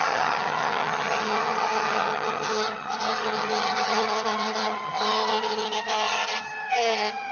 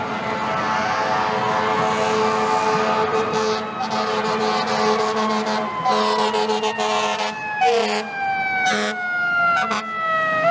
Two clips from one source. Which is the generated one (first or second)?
first